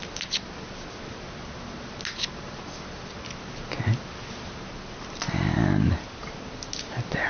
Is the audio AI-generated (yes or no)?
no